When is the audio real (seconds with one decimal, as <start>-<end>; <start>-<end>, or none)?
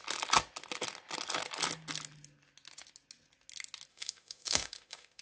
0.0-3.9